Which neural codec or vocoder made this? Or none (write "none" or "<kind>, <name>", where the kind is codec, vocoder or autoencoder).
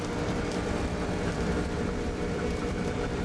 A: vocoder, BigVGAN v2